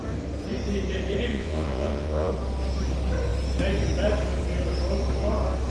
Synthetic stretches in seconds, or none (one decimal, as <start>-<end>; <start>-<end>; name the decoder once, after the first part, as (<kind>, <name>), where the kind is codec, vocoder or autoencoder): 1.3-2.3 (vocoder, Vocos)